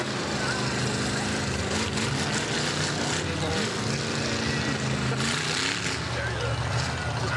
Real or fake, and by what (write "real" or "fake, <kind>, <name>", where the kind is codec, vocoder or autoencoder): real